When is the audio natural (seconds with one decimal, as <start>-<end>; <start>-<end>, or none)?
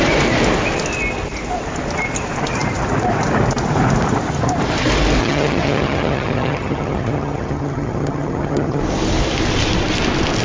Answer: 0.0-5.2; 8.8-10.4